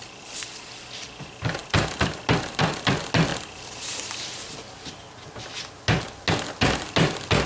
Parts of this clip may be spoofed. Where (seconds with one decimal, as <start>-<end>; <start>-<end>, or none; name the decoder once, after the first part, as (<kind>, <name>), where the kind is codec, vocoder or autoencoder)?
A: none